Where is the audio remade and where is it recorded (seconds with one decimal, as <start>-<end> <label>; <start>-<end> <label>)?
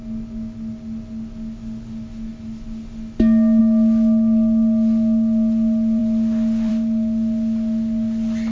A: 0.0-8.5 recorded